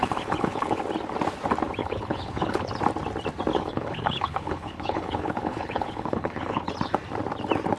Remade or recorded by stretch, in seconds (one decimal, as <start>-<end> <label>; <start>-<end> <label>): 0.0-0.8 remade; 0.8-1.8 recorded; 1.8-2.7 remade; 2.7-3.5 recorded; 3.5-6.7 remade; 6.7-7.8 recorded